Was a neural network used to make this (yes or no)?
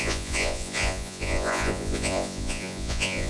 yes